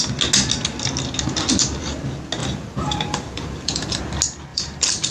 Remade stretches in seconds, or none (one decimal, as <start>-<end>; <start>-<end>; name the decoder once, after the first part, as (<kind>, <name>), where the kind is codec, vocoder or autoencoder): 2.4-4.0 (vocoder, BigVGAN v2); 4.5-5.1